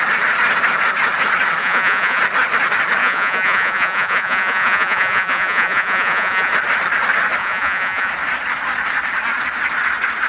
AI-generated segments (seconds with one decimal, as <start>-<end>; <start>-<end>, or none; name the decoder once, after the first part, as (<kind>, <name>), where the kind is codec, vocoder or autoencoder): 1.6-2.2 (vocoder, Vocos); 3.0-6.5; 7.4-8.1